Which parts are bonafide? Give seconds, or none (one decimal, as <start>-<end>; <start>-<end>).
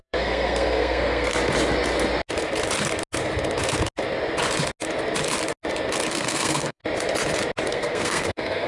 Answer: 1.3-6.1; 6.8-7.7